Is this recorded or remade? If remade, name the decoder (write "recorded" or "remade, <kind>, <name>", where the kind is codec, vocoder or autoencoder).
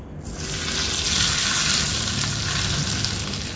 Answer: recorded